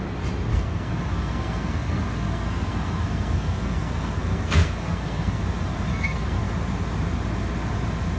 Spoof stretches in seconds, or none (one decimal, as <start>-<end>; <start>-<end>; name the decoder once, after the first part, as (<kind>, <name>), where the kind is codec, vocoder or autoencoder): 0.5-5.4 (codec, SNAC); 5.9-6.5